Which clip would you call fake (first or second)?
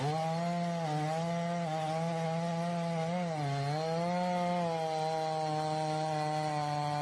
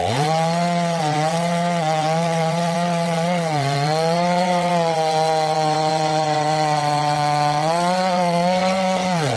second